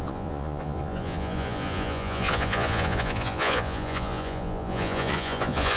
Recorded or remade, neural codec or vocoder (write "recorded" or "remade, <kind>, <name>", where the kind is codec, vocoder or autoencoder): remade, vocoder, Vocos